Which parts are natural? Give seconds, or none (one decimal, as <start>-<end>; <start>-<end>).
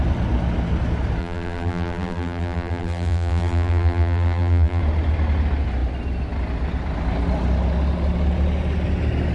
0.0-1.2; 4.8-9.3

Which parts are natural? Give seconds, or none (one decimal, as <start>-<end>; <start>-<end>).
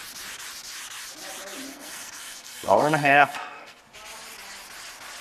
0.0-1.7; 3.8-5.2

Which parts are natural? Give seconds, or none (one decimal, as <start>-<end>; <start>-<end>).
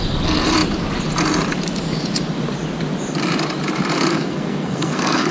0.0-4.1